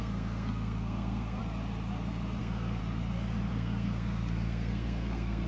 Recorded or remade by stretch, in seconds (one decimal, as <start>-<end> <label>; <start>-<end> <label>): 0.0-1.4 remade; 1.4-2.4 recorded; 2.4-2.8 remade; 2.8-3.5 recorded; 3.5-5.5 remade